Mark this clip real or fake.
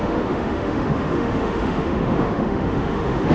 fake